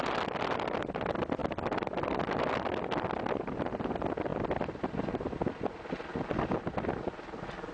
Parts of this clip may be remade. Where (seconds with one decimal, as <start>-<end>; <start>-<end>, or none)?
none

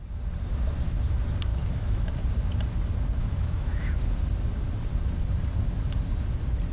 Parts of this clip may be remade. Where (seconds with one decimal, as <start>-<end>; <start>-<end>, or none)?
1.5-2.1; 3.2-3.8

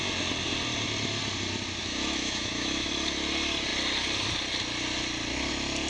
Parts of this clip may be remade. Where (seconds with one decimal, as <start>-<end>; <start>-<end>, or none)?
1.8-2.9